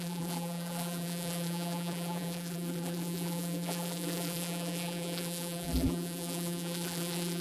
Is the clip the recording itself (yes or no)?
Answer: no